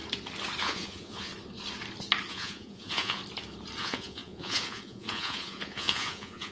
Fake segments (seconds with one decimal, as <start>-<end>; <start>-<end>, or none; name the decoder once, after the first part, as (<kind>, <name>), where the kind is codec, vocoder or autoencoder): 0.6-1.3 (vocoder, Vocos); 2.3-3.2; 3.8-6.5